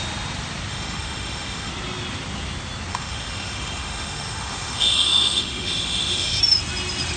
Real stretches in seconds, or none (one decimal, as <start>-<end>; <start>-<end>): 0.0-0.7; 1.7-2.9; 6.4-7.2